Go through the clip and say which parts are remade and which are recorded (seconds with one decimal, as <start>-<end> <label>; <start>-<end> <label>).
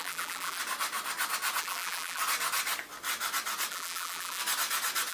0.0-0.6 remade; 0.6-1.6 recorded; 1.6-2.2 remade; 2.2-3.7 recorded; 3.7-4.4 remade; 4.4-5.1 recorded